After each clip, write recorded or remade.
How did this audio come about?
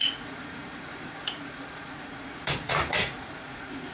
remade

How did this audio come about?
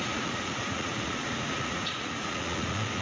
remade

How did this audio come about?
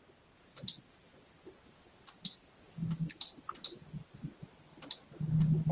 recorded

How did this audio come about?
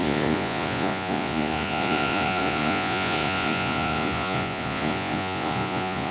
remade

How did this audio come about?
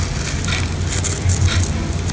recorded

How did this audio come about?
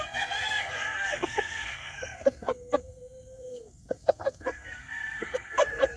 remade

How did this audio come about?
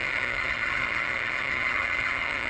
remade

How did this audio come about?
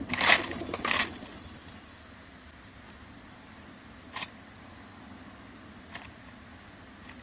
recorded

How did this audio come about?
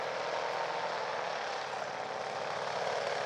recorded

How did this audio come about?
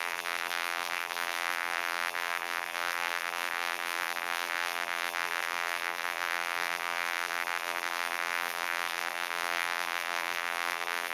remade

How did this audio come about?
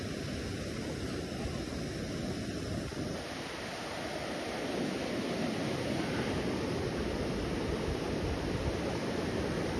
recorded